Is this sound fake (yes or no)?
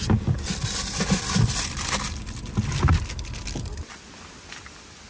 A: no